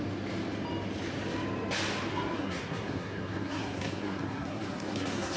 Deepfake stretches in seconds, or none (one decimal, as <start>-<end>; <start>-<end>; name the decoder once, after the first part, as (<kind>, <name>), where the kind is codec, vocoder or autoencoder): 2.1-5.4 (codec, SNAC)